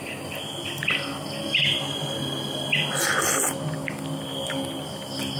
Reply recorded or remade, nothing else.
recorded